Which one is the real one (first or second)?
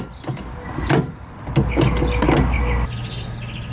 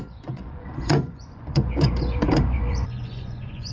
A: first